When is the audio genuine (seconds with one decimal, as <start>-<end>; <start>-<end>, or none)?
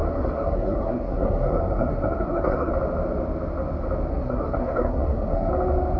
2.7-4.1; 5.5-6.0